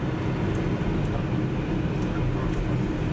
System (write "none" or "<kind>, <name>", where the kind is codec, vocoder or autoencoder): none